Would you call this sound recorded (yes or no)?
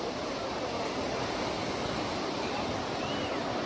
yes